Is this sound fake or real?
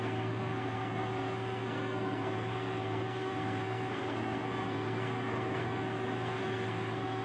fake